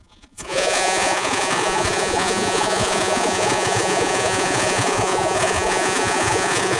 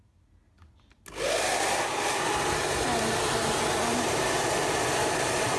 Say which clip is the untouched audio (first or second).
second